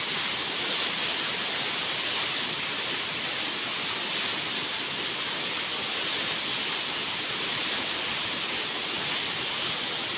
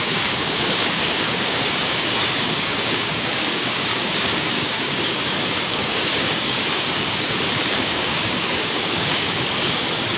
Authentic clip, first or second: first